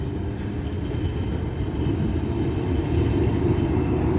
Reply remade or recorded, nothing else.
recorded